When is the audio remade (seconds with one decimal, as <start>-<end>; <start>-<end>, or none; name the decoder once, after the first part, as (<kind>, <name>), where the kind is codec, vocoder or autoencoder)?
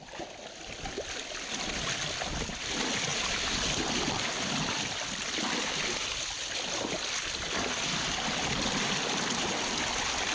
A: none